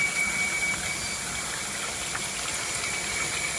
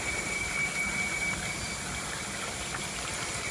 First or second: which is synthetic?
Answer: second